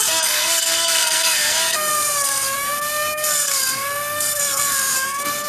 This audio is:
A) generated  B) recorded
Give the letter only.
A